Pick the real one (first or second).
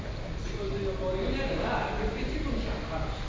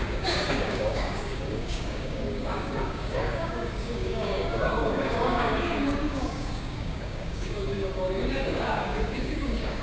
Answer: first